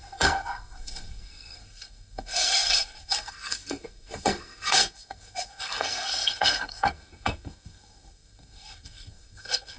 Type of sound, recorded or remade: remade